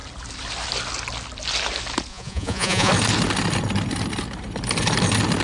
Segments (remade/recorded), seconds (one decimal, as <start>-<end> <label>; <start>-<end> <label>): 0.0-2.1 recorded; 2.1-2.9 remade; 2.9-5.4 recorded